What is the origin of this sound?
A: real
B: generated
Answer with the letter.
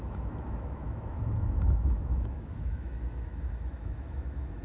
B